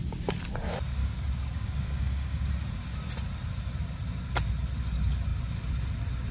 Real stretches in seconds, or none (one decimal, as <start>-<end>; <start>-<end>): 0.0-1.0; 2.5-6.3